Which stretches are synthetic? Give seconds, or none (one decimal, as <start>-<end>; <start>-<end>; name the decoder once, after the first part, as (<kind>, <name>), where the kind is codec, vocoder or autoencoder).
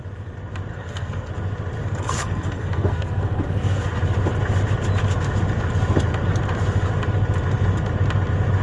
0.7-1.3 (codec, SNAC); 1.8-3.9